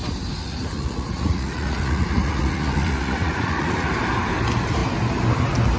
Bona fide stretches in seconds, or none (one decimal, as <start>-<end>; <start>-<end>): 0.0-0.4; 3.9-5.8